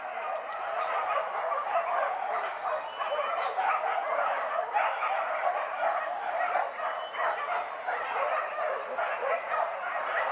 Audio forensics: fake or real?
real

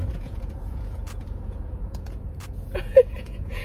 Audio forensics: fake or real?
fake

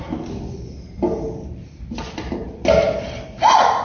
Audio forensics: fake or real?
real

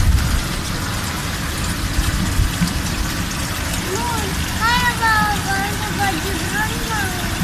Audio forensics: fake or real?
real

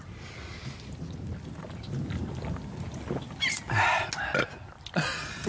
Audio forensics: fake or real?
real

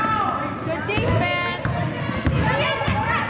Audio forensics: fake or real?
real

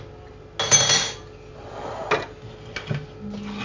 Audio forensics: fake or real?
real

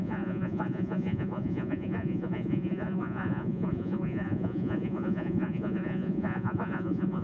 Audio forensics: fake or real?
fake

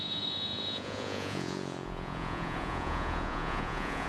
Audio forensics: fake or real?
fake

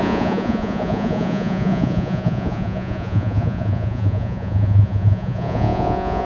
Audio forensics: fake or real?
fake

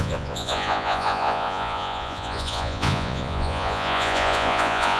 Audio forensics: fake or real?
fake